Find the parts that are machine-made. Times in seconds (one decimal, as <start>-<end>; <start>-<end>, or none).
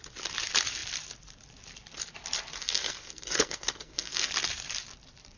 2.6-4.3